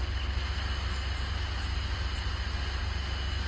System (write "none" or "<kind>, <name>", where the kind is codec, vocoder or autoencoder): none